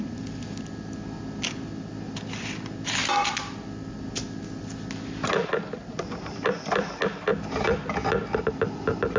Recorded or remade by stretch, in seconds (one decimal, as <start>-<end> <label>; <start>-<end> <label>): 0.0-9.2 recorded